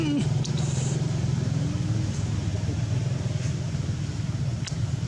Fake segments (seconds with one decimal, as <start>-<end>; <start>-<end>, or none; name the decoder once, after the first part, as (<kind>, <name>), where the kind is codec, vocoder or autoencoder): none